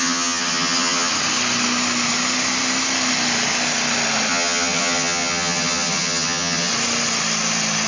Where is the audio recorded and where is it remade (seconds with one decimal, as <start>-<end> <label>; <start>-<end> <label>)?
0.0-1.1 remade; 1.1-4.3 recorded; 4.3-6.7 remade; 6.7-7.9 recorded